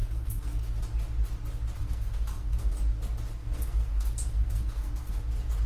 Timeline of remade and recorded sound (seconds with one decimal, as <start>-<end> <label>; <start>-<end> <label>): 0.0-0.8 remade; 0.8-1.8 recorded; 1.8-2.7 remade; 2.7-3.4 recorded; 3.4-5.2 remade; 5.2-5.7 recorded